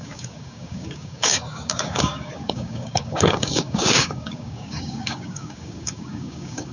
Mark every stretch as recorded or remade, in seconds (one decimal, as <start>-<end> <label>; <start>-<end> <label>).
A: 0.0-6.7 remade